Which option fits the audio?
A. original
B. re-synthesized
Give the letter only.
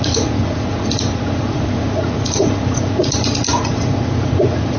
B